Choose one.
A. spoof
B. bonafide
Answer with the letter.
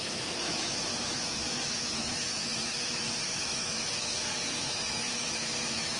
A